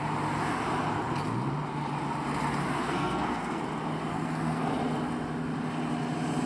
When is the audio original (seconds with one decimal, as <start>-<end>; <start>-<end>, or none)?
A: 0.0-2.8; 3.6-4.1; 4.7-6.5

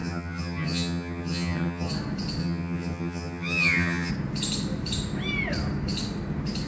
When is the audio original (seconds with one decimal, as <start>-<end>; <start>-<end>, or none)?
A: 1.9-2.4; 4.1-6.7

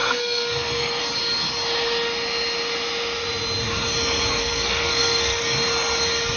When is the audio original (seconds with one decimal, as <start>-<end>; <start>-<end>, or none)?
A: 1.0-4.4; 5.4-6.4

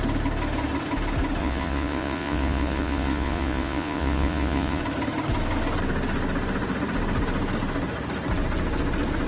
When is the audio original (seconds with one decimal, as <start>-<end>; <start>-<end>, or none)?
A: 0.0-1.4; 4.8-9.3

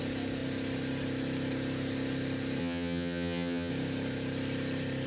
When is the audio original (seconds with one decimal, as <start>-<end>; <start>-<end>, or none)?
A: 0.0-2.6; 3.7-5.1